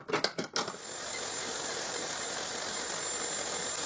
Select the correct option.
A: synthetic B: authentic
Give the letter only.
B